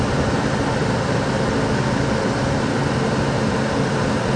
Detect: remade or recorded recorded